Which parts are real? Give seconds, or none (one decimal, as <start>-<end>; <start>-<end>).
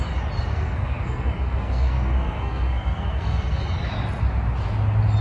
0.0-0.5; 3.6-5.2